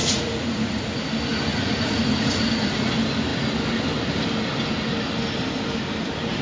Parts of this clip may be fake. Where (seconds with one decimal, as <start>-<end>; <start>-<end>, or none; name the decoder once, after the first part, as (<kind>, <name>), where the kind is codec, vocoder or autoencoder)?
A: 0.0-0.9 (vocoder, Vocos); 1.5-2.9